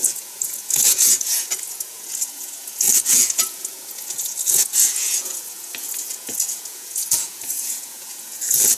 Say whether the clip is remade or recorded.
remade